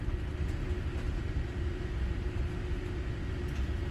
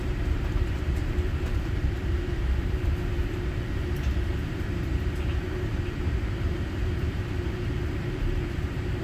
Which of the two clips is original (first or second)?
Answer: first